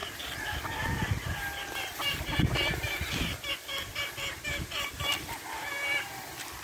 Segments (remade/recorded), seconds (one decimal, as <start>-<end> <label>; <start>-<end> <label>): 0.0-6.6 recorded